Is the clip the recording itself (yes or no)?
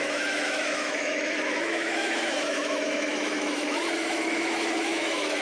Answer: no